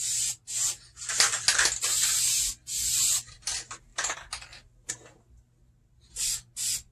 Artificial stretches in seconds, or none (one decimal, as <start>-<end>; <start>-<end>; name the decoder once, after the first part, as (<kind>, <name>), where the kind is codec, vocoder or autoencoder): none